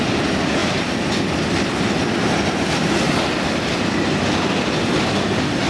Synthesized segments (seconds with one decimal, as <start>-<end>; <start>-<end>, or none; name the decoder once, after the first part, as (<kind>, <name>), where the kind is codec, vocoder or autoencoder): none